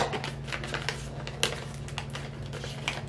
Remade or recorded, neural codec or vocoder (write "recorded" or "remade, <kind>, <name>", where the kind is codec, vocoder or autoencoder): recorded